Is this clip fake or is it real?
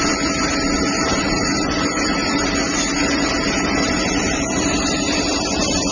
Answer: real